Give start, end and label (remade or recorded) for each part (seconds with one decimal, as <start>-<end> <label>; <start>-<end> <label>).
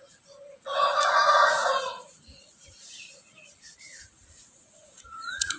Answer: 0.0-5.6 remade